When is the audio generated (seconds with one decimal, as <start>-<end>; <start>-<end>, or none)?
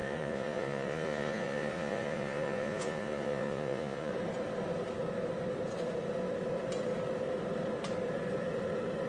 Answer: 0.0-4.1